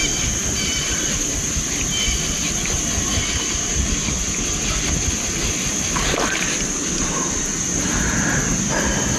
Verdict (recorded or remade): recorded